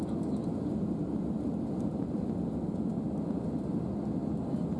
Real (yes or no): yes